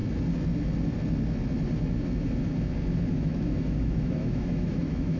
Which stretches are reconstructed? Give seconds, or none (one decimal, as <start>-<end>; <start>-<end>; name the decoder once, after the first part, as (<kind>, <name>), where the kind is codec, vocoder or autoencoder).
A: 3.1-5.2 (autoencoder, DAC-VAE)